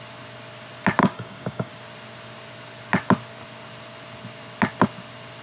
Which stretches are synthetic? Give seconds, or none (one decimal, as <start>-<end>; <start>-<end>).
1.0-1.7